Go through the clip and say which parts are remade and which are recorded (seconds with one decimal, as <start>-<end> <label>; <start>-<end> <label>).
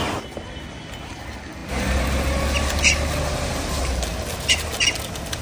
0.0-5.4 recorded